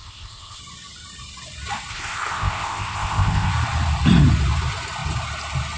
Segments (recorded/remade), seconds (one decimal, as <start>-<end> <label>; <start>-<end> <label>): 0.0-0.6 remade; 0.6-1.9 recorded; 1.9-3.5 remade; 3.5-5.8 recorded